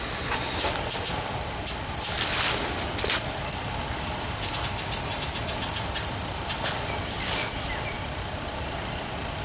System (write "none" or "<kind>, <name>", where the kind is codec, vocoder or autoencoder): none